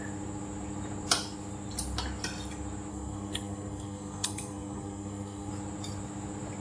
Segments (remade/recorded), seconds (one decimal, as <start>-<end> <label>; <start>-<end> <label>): 0.0-2.9 recorded; 2.9-5.5 remade; 5.5-6.6 recorded